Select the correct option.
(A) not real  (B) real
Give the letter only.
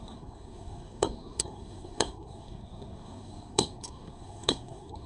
A